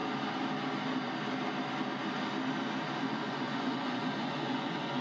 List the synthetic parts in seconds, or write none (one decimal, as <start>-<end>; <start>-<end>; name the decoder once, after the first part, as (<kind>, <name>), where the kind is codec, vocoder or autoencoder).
3.0-5.0 (vocoder, Vocos)

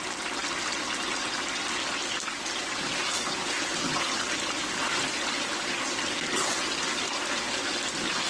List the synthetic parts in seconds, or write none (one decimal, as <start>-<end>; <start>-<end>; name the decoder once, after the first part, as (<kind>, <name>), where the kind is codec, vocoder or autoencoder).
none

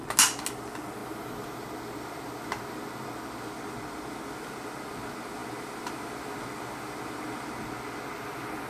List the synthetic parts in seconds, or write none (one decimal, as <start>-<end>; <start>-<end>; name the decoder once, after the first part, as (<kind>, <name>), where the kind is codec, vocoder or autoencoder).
none

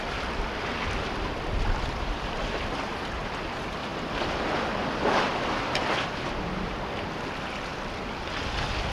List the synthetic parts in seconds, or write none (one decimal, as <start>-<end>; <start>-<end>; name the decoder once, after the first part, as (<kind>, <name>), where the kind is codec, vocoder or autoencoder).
3.9-5.7 (vocoder, BigVGAN v2); 7.7-8.3

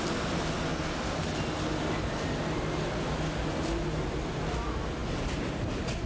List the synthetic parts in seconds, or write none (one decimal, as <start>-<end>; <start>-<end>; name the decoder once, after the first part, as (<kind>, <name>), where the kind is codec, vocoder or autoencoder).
none

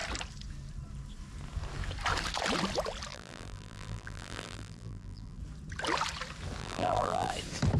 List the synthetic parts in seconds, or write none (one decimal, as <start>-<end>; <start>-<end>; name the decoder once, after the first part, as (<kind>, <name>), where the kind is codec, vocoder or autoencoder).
3.1-5.4 (vocoder, BigVGAN v2); 6.6-7.3

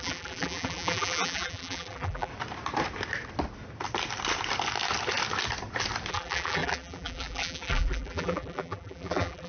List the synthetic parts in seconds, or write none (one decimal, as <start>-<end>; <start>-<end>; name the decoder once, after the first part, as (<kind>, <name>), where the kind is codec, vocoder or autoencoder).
0.0-2.3 (vocoder, BigVGAN v2); 6.1-9.5